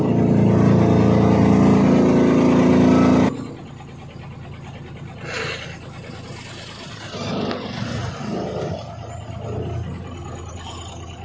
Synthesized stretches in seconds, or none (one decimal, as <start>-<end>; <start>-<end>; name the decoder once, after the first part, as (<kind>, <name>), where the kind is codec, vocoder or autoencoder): none